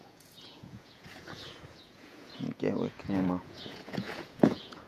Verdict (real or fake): fake